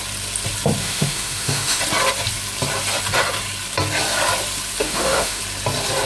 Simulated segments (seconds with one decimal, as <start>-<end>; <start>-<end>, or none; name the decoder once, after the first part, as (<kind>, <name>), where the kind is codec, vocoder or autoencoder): 0.8-1.8 (autoencoder, DAC-VAE); 4.8-5.4